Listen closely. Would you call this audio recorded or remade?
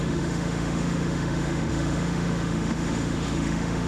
remade